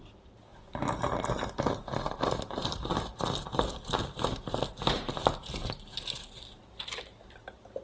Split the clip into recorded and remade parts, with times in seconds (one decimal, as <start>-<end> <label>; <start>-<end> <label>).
0.0-7.8 recorded